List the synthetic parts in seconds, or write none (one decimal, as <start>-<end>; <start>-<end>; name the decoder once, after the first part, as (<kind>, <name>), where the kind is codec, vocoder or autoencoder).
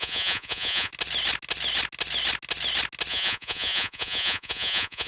0.0-0.9 (vocoder, Vocos); 3.1-5.1